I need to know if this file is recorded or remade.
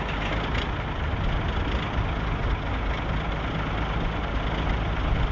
recorded